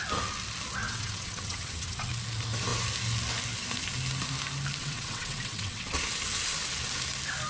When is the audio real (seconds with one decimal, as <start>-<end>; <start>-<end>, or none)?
0.0-0.8; 2.1-4.8; 6.0-7.5